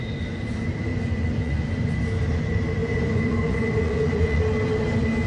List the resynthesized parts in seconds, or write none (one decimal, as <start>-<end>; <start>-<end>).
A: 0.9-2.0; 2.8-4.4